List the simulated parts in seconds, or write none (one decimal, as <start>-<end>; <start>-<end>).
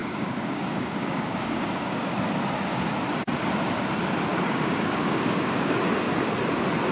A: 0.0-2.1; 4.3-5.8